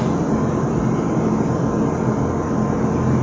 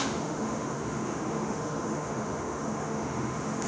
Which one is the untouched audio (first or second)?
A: first